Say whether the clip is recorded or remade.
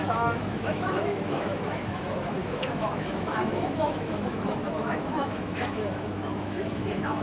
remade